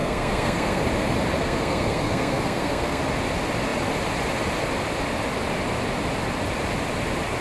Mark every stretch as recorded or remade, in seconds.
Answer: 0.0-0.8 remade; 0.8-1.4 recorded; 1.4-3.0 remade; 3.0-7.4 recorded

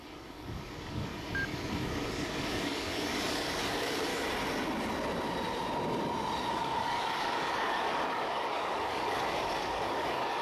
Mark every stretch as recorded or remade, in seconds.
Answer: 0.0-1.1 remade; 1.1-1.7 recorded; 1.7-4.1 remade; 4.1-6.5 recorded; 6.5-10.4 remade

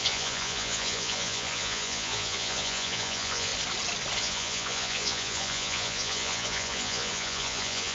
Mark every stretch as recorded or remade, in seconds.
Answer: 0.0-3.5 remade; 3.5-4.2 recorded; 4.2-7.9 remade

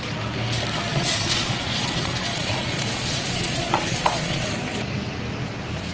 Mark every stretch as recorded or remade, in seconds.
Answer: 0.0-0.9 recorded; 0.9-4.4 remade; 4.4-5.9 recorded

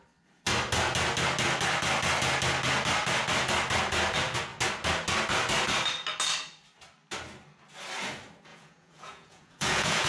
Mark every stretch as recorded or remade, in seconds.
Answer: 0.0-8.5 recorded; 8.5-10.1 remade

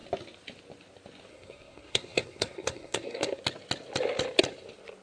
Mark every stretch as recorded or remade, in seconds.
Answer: 0.0-1.3 recorded; 1.3-3.4 remade; 3.4-5.0 recorded

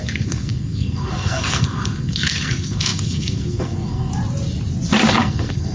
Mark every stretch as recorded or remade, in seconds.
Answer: 0.0-4.1 remade; 4.1-5.2 recorded; 5.2-5.7 remade

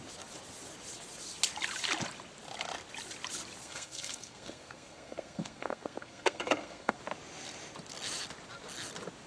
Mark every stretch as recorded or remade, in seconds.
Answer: 0.0-3.6 recorded; 3.6-7.0 remade; 7.0-9.3 recorded